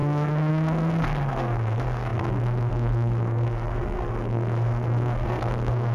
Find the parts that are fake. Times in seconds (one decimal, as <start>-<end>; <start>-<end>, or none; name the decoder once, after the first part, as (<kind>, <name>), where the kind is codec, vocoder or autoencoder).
0.0-5.9 (codec, SNAC)